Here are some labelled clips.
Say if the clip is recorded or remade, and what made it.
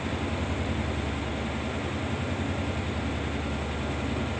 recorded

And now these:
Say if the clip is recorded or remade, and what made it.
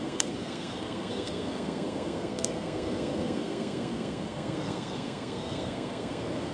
remade, codec, SNAC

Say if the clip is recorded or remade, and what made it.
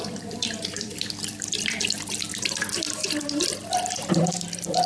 remade, vocoder, BigVGAN v2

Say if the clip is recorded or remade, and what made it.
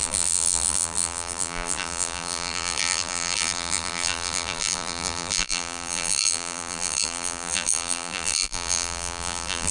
remade, vocoder, BigVGAN v2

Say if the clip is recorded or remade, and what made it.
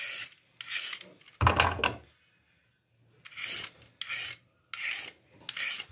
recorded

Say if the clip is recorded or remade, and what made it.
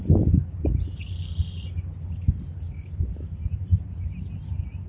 recorded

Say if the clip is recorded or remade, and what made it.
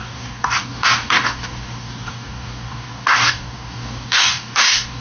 remade, codec, DAC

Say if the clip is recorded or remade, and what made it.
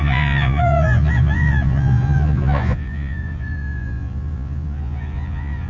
remade, vocoder, Vocos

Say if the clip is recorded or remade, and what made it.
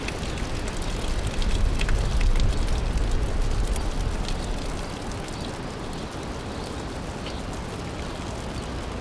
recorded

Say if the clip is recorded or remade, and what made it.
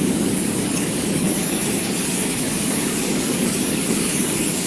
remade, codec, DAC